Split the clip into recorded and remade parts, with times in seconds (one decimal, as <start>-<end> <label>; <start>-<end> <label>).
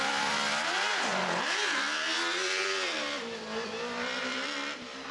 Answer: 0.0-5.1 remade